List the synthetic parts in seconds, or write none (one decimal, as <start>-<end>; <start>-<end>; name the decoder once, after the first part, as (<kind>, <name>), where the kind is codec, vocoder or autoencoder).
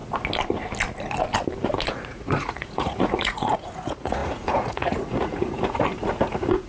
1.9-6.7 (vocoder, Vocos)